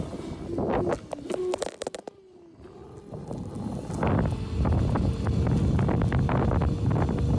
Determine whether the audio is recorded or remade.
recorded